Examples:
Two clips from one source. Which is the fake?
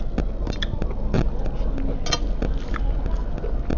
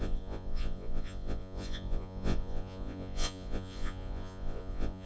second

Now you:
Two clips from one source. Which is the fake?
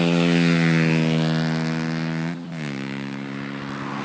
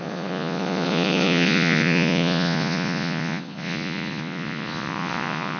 second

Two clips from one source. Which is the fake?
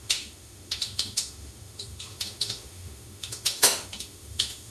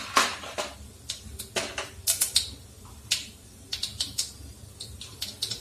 first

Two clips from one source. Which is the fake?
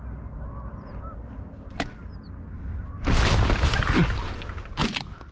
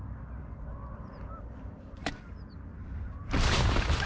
second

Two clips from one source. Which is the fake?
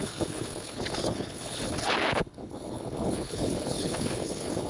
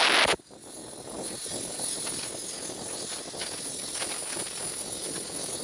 first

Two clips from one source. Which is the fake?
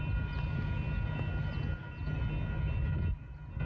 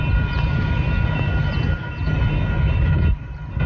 second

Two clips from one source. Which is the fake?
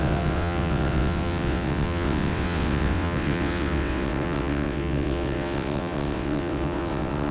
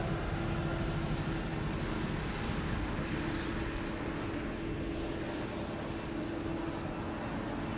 first